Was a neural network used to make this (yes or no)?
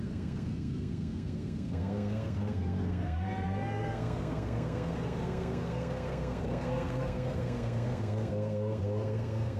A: yes